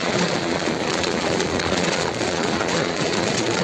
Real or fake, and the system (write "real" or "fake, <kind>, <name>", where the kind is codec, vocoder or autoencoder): fake, vocoder, Vocos